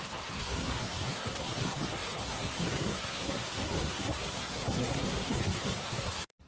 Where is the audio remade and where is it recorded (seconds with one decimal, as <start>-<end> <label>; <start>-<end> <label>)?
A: 0.0-6.5 remade